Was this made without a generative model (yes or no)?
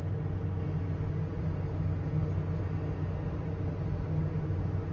yes